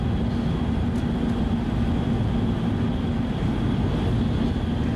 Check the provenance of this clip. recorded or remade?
recorded